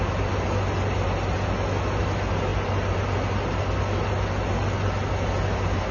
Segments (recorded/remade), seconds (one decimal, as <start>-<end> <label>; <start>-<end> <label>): 0.0-5.9 recorded